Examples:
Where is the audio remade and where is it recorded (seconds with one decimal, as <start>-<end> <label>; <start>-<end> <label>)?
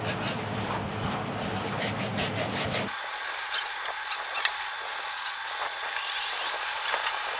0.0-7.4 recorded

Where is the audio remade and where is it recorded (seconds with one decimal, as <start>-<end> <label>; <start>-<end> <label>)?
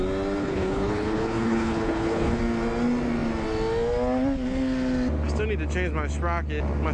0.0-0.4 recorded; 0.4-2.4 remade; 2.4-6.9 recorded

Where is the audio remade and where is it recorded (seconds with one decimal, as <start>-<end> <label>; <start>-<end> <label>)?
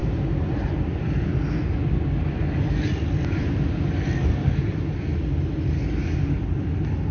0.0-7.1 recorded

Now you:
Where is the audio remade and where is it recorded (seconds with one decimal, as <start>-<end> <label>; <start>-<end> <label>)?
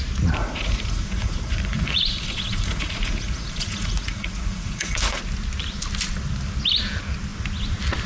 0.0-0.4 recorded; 0.4-5.2 remade; 5.2-8.1 recorded